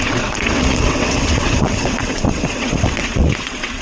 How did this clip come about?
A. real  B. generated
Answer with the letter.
B